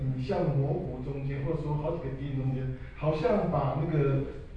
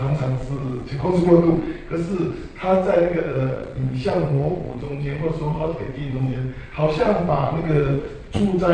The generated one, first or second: second